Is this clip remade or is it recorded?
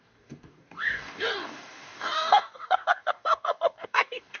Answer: remade